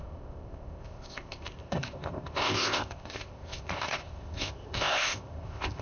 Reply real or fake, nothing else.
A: fake